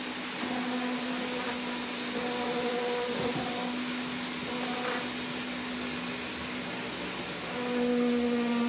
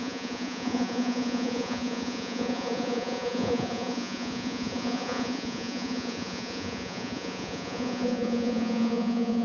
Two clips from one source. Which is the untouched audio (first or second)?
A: first